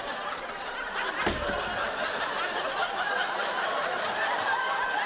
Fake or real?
real